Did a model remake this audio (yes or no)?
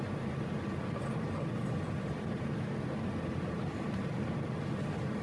no